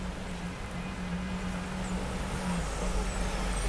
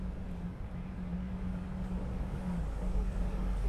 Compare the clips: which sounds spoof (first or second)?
second